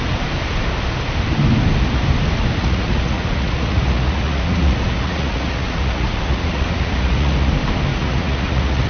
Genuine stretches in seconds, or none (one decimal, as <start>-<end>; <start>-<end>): 0.0-2.6; 7.5-7.9